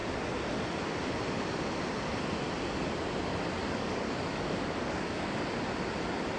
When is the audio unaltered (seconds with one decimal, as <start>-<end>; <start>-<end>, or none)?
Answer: 0.0-3.6; 5.4-6.4